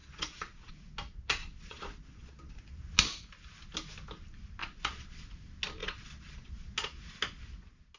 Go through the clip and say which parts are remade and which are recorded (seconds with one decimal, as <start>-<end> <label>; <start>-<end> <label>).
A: 0.0-0.7 remade; 0.7-1.4 recorded; 1.4-2.6 remade; 2.6-4.6 recorded; 4.6-5.2 remade; 5.2-5.8 recorded; 5.8-6.5 remade; 6.5-8.0 recorded

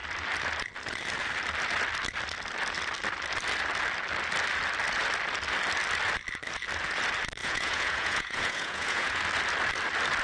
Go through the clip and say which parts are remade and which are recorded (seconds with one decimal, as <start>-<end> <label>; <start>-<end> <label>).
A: 0.0-7.4 recorded; 7.4-9.2 remade; 9.2-10.2 recorded

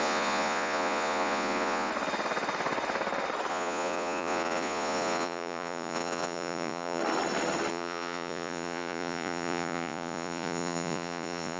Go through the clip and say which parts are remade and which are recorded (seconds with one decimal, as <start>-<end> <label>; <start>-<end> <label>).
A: 0.0-1.9 remade; 1.9-3.5 recorded; 3.5-7.0 remade; 7.0-7.7 recorded; 7.7-11.6 remade

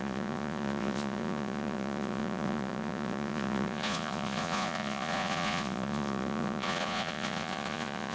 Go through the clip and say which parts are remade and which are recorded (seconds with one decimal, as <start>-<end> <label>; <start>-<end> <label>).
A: 0.0-8.1 remade

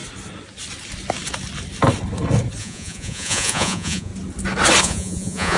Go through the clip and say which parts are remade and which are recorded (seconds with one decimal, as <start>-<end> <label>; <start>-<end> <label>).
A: 0.0-2.6 recorded; 2.6-4.1 remade; 4.1-4.8 recorded; 4.8-5.6 remade

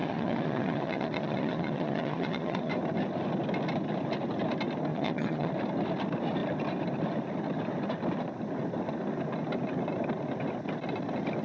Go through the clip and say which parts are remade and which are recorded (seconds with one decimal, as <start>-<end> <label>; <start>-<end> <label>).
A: 0.0-2.7 remade; 2.7-4.9 recorded; 4.9-5.5 remade; 5.5-11.4 recorded

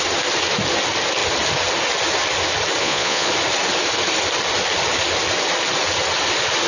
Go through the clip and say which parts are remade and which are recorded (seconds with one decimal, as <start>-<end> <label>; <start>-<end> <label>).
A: 0.0-2.8 recorded; 2.8-3.3 remade; 3.3-6.7 recorded